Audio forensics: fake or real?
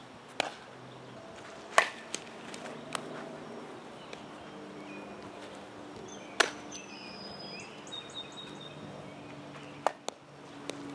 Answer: real